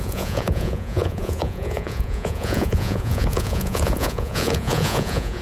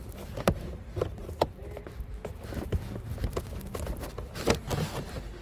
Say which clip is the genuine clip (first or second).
second